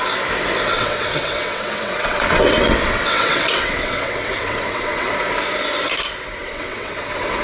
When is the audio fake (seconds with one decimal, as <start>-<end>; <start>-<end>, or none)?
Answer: 0.7-5.1; 6.4-7.4